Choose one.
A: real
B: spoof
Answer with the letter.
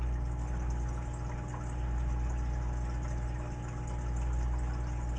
A